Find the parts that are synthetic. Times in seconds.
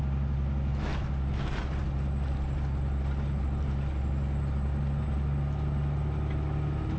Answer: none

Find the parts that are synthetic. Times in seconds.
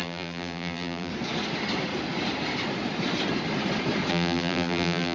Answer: 0.0-1.1 (vocoder, BigVGAN v2); 4.1-5.1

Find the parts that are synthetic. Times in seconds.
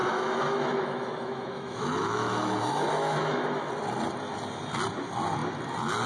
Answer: 0.0-3.7 (autoencoder, DAC-VAE)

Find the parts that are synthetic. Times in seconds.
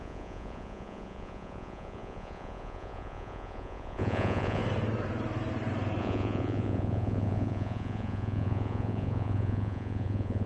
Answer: 0.0-4.6 (vocoder, Vocos); 6.0-10.5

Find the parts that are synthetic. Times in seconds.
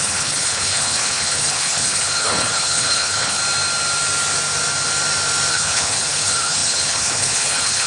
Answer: 0.0-3.4 (codec, HILCodec); 5.5-7.9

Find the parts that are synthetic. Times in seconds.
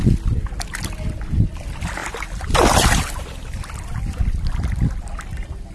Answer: none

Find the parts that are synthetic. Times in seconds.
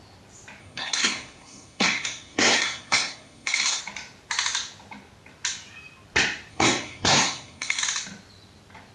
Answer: 0.6-3.8 (codec, SNAC); 6.5-7.8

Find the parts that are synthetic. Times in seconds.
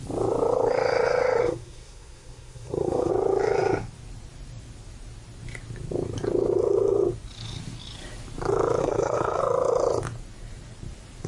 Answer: 1.4-3.1 (codec, SNAC); 8.8-9.4